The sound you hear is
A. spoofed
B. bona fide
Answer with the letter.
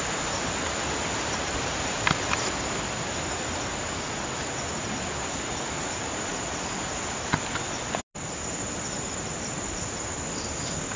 B